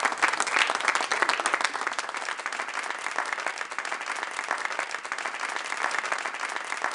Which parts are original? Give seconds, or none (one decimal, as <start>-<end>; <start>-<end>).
0.0-6.9